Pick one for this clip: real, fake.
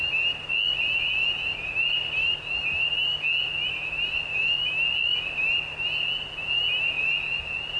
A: real